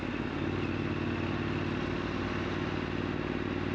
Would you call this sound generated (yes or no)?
no